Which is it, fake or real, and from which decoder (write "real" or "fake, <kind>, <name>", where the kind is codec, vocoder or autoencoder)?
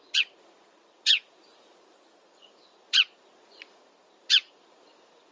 fake, vocoder, Vocos